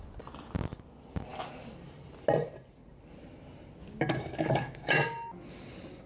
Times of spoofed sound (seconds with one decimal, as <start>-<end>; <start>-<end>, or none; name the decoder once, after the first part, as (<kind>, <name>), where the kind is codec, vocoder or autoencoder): 3.8-4.9 (codec, DAC)